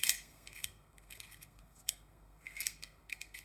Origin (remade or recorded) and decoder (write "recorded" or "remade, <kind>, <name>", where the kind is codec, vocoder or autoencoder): remade, codec, SNAC